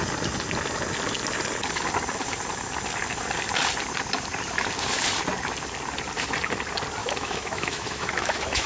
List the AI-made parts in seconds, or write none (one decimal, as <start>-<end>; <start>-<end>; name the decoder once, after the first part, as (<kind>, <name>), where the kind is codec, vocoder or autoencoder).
7.0-8.7 (autoencoder, DAC-VAE)